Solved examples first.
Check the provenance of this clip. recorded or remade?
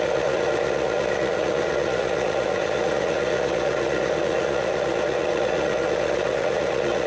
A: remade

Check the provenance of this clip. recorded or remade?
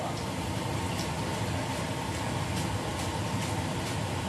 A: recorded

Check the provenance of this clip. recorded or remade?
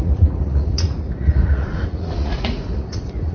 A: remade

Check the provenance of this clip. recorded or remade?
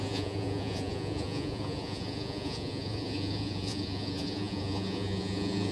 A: remade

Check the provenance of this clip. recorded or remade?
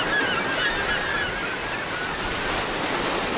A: recorded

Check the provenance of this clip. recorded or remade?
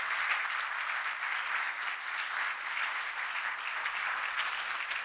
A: recorded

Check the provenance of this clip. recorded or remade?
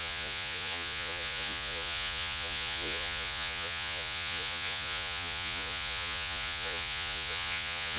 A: remade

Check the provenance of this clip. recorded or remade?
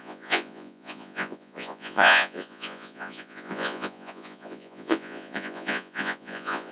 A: remade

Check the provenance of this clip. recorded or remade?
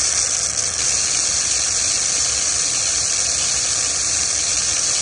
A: recorded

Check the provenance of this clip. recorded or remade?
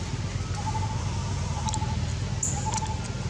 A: recorded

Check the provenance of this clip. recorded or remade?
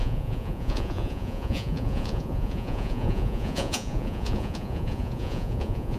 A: remade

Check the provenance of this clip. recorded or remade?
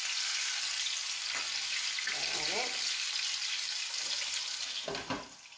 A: recorded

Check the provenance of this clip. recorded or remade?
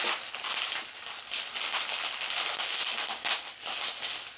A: recorded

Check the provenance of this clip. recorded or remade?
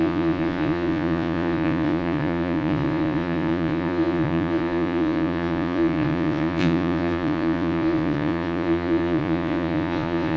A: remade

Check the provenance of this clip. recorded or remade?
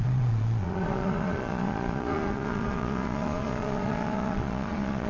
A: remade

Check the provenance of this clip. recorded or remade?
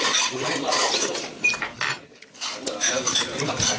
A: recorded